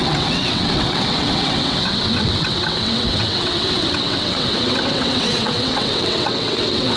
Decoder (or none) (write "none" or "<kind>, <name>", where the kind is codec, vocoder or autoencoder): vocoder, WaveNeXt